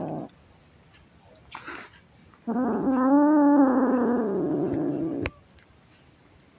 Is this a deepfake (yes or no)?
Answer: no